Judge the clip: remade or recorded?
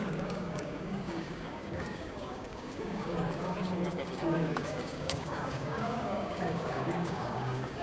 remade